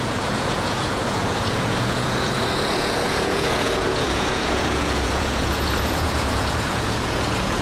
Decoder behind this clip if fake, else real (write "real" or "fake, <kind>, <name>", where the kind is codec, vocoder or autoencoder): fake, vocoder, Vocos